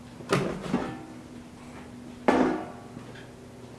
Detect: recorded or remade recorded